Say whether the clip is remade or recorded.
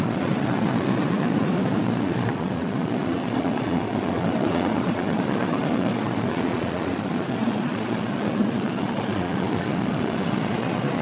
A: remade